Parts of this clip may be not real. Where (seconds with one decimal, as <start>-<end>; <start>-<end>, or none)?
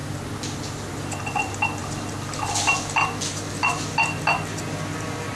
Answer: none